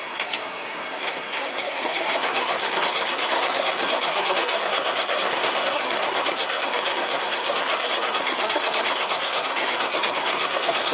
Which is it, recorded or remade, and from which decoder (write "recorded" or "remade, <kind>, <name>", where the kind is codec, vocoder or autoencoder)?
remade, codec, SNAC